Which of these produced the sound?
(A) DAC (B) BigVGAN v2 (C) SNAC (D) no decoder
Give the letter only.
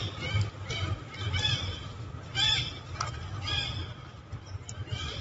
D